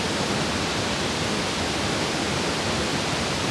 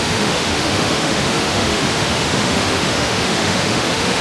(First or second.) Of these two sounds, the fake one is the second